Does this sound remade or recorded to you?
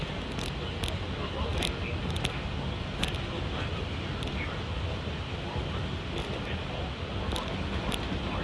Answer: recorded